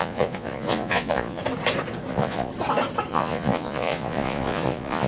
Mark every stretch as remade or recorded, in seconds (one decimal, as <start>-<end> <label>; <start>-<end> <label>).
0.0-1.4 remade; 1.4-2.1 recorded; 2.1-2.5 remade; 2.5-3.1 recorded; 3.1-5.1 remade

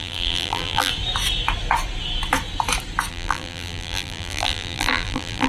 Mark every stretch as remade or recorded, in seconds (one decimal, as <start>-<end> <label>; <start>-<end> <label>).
0.0-0.9 remade; 0.9-3.1 recorded; 3.1-5.5 remade

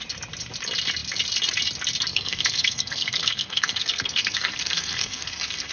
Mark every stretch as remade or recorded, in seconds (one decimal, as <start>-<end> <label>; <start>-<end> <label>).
0.0-2.1 recorded; 2.1-5.7 remade